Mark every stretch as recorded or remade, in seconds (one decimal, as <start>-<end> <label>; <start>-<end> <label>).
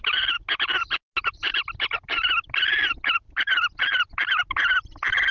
0.0-5.3 recorded